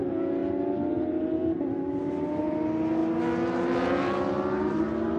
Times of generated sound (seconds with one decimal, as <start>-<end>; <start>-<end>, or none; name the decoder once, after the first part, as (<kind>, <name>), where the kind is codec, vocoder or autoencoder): none